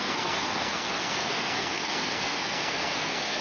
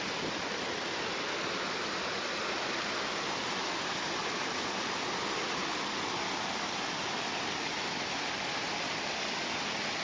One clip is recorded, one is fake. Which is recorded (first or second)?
second